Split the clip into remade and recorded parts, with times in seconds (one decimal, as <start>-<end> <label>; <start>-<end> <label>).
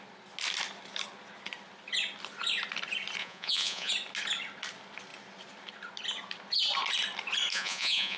0.0-3.2 recorded; 3.2-3.9 remade; 3.9-7.5 recorded; 7.5-8.2 remade